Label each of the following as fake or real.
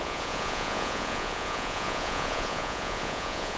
fake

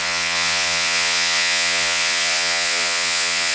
fake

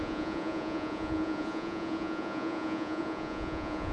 fake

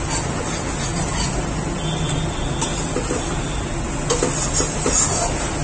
real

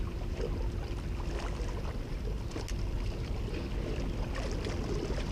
real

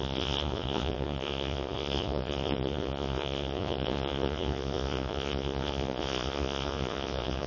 fake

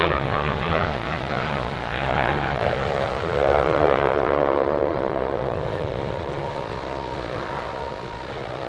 fake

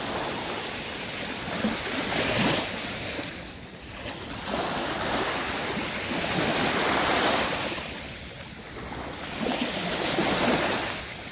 real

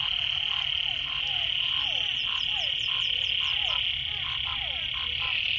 real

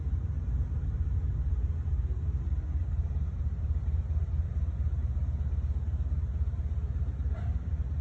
real